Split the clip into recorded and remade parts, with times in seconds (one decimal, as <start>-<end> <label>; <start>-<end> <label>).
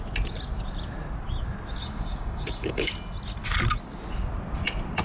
0.0-1.8 recorded; 1.8-2.9 remade; 2.9-5.0 recorded